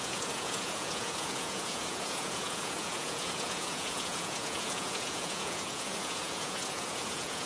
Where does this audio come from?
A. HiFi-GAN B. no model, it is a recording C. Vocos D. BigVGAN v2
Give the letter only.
C